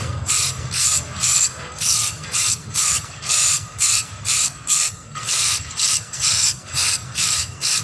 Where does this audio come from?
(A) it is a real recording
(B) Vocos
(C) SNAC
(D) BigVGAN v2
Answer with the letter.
C